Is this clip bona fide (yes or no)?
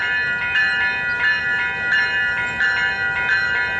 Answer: yes